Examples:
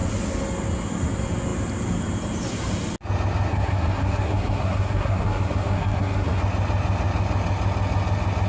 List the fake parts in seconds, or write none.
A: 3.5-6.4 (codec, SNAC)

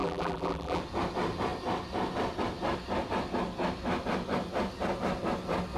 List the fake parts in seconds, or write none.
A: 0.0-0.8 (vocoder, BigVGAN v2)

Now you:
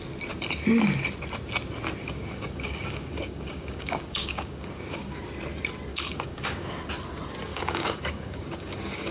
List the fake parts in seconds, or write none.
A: 2.0-5.2 (codec, DAC); 5.9-6.7; 7.5-9.1